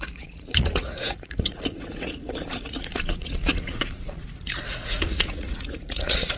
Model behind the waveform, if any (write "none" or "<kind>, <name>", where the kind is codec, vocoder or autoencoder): vocoder, Vocos